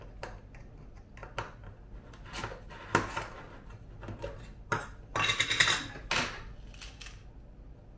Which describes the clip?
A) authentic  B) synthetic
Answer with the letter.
A